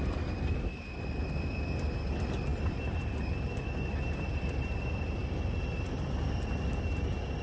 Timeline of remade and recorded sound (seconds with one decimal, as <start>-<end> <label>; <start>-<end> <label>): 0.0-7.4 recorded